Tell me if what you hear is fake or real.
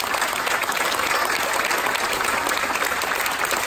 fake